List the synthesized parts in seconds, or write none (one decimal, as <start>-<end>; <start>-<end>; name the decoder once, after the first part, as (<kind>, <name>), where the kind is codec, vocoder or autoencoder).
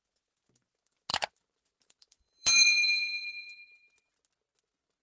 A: 1.1-4.1 (vocoder, BigVGAN v2)